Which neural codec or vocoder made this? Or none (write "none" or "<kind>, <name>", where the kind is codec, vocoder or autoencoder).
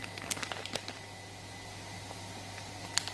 none